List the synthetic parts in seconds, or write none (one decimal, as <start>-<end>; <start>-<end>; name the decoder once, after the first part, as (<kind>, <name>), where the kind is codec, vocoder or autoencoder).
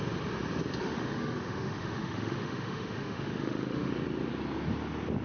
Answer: 0.8-3.9 (autoencoder, DAC-VAE)